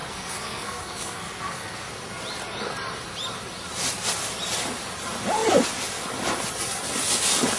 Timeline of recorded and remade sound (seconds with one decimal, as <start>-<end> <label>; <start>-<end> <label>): 0.0-1.9 remade; 1.9-7.6 recorded